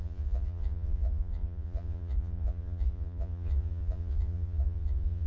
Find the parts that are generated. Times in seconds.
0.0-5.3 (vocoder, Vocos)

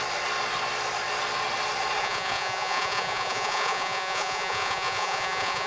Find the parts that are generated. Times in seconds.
2.0-5.7 (vocoder, Vocos)

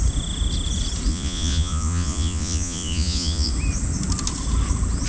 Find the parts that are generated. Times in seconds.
1.1-3.5 (vocoder, Vocos)

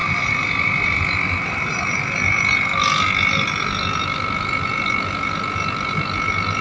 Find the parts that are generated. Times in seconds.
none

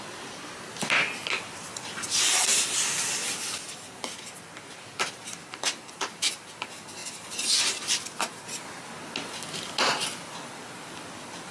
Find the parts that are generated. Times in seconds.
5.4-6.5 (vocoder, BigVGAN v2); 7.0-8.7

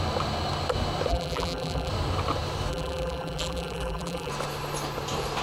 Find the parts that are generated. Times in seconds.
1.1-1.9 (vocoder, BigVGAN v2); 2.7-4.3

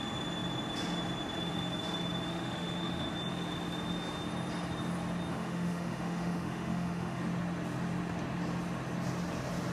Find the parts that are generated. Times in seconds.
2.3-3.1 (autoencoder, DAC-VAE); 5.3-7.2

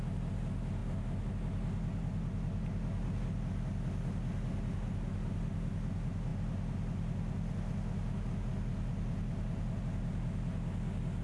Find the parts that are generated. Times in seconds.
none